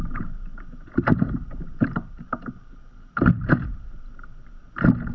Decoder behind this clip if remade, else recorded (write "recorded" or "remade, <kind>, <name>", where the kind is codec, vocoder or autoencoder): remade, vocoder, BigVGAN v2